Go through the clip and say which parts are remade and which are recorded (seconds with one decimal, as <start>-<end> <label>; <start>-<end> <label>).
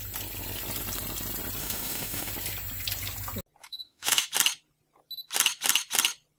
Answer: 0.0-1.6 recorded; 1.6-2.3 remade; 2.3-3.6 recorded; 3.6-4.3 remade; 4.3-6.4 recorded